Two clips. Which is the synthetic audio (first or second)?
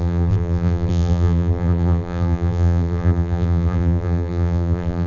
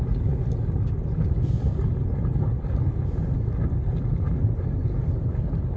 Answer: first